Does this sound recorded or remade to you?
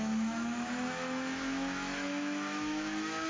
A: remade